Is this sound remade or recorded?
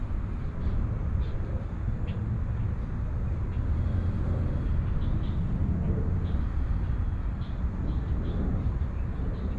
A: recorded